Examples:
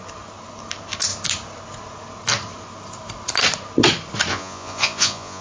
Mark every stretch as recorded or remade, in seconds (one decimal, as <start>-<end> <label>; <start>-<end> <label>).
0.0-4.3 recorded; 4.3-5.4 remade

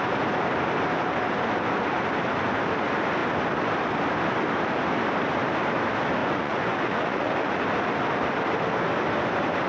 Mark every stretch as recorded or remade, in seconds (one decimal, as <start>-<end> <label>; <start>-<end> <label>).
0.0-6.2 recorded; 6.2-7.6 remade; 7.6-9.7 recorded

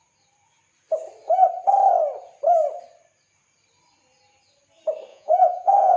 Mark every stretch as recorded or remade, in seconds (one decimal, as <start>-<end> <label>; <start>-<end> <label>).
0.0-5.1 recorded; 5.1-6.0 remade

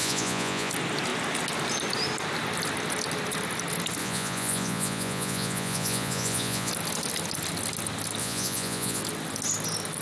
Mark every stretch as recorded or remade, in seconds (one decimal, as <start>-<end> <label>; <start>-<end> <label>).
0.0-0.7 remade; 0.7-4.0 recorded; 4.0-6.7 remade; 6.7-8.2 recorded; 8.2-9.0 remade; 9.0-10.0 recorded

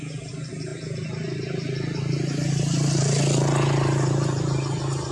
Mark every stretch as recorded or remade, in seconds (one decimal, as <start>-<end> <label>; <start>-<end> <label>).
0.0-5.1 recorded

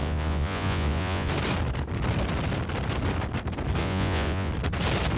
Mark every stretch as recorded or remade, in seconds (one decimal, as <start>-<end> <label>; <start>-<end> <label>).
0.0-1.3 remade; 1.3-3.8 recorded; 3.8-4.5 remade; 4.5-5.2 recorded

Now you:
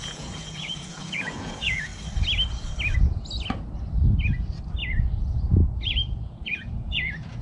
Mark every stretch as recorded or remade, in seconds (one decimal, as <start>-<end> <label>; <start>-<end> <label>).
0.0-1.9 remade; 1.9-4.9 recorded; 4.9-7.4 remade

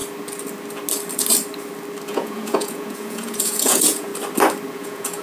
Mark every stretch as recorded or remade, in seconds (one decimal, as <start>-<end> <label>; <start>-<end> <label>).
0.0-2.1 recorded; 2.1-4.1 remade; 4.1-4.7 recorded; 4.7-5.2 remade